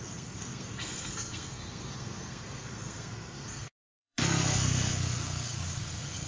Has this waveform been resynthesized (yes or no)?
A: yes